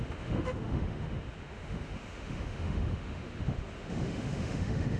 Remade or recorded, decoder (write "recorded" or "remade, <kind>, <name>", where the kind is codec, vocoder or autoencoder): remade, autoencoder, DAC-VAE